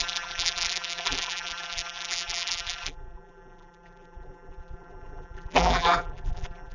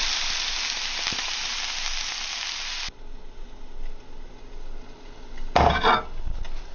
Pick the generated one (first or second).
first